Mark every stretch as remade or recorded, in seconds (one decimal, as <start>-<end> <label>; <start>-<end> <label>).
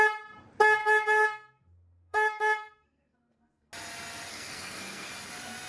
0.0-0.8 recorded; 0.8-3.7 remade; 3.7-4.3 recorded; 4.3-5.1 remade; 5.1-5.7 recorded